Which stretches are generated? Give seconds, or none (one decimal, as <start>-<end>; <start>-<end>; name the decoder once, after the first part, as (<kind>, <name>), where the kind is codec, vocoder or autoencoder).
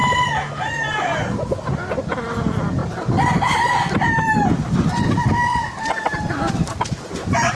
1.7-7.5 (vocoder, BigVGAN v2)